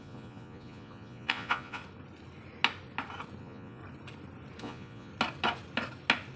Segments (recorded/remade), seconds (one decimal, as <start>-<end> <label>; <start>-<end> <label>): 0.0-1.8 remade; 1.8-3.4 recorded; 3.4-3.8 remade; 3.8-4.6 recorded; 4.6-5.1 remade; 5.1-6.4 recorded